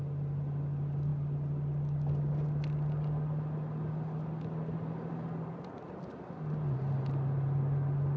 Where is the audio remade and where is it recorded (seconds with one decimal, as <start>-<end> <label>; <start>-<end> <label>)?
0.0-8.2 recorded